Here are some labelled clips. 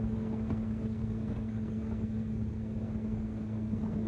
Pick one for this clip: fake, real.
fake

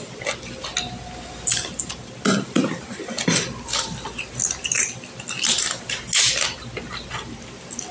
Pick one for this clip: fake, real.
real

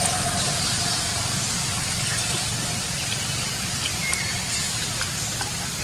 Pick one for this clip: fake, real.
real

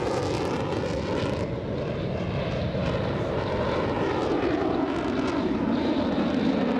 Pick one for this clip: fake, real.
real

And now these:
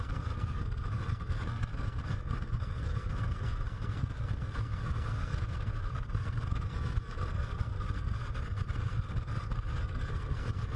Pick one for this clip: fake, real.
fake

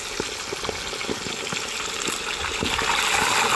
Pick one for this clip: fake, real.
real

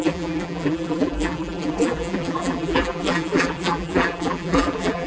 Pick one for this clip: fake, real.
fake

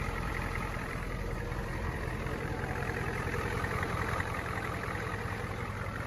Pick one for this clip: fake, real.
fake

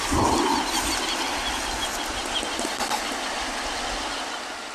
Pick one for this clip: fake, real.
real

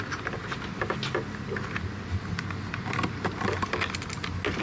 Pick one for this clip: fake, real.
real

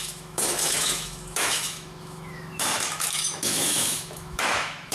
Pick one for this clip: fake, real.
fake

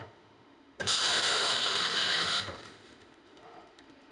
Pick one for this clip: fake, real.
fake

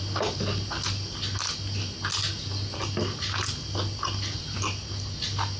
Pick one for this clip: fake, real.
real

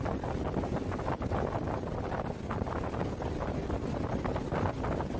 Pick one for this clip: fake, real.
real